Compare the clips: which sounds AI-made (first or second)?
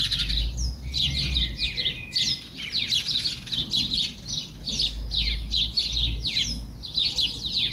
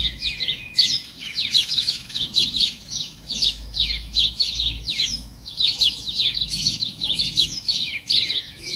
second